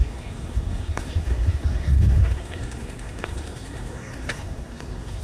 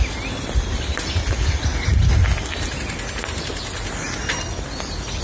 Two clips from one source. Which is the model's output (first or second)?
first